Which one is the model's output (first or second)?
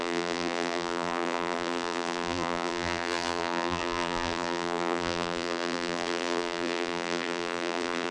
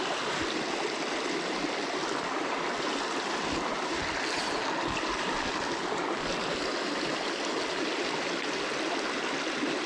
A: first